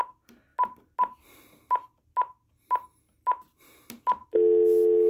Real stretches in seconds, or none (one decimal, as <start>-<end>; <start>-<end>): 0.0-5.1